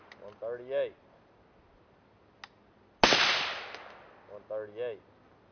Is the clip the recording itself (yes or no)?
yes